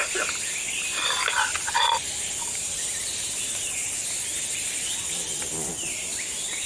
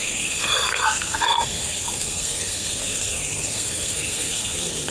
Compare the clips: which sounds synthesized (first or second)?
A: second